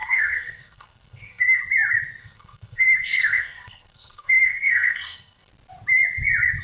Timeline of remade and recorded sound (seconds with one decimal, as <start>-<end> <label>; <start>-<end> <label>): 0.0-1.6 remade; 1.6-2.2 recorded; 2.2-5.5 remade; 5.5-6.6 recorded